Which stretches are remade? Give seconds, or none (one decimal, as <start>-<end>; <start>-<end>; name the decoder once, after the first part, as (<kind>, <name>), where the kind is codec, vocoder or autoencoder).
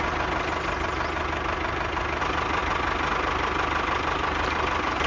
none